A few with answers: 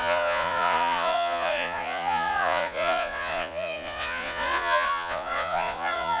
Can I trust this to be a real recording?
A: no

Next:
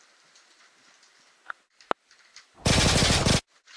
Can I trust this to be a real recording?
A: yes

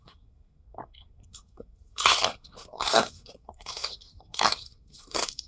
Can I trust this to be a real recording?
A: no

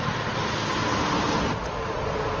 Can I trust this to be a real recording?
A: yes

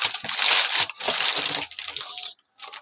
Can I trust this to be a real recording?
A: yes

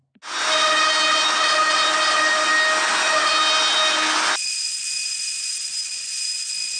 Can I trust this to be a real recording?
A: yes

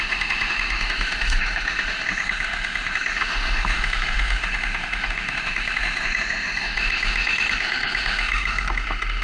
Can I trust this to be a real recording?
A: no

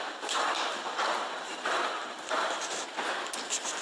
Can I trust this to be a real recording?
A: yes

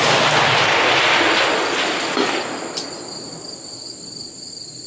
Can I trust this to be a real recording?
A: yes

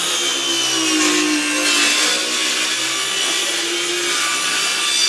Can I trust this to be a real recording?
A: yes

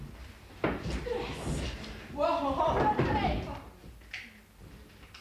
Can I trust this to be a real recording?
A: yes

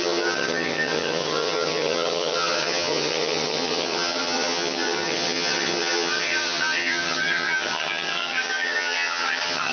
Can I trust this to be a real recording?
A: no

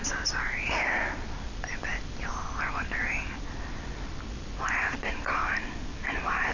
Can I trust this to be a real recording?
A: yes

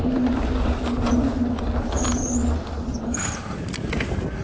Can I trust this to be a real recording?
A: yes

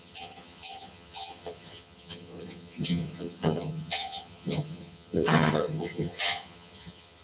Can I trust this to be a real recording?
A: no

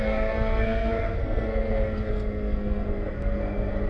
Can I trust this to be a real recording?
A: no